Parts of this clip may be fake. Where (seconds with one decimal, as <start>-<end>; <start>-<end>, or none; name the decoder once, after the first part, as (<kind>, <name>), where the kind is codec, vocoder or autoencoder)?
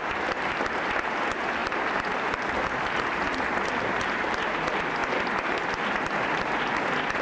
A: none